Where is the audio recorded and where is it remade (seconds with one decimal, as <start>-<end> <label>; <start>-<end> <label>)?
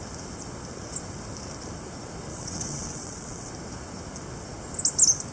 0.0-2.3 recorded; 2.3-3.5 remade; 3.5-5.3 recorded